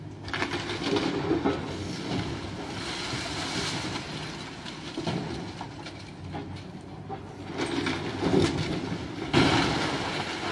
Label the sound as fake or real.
real